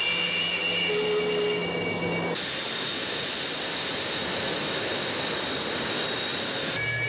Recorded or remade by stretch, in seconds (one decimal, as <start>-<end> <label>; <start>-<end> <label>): 0.0-7.1 recorded